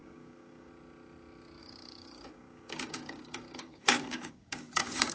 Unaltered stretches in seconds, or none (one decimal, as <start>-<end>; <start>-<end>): 0.7-1.6